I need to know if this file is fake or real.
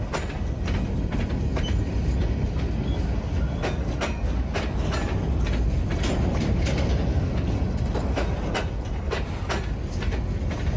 real